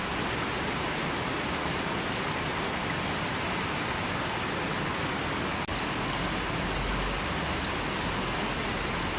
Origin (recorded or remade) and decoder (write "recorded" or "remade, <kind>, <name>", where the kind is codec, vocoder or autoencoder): recorded